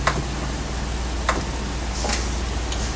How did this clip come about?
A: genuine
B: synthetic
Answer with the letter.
A